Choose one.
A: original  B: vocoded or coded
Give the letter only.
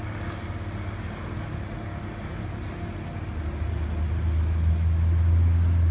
A